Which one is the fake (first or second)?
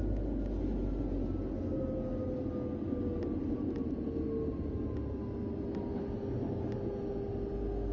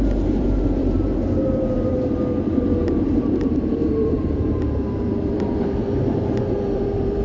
second